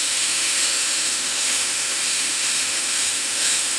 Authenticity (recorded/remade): remade